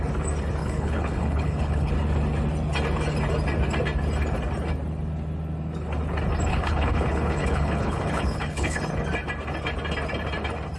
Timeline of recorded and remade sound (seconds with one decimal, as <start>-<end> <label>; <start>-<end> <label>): 0.0-0.6 recorded; 0.6-1.9 remade; 1.9-6.5 recorded; 6.5-8.8 remade; 8.8-10.8 recorded